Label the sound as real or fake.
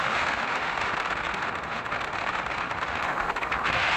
fake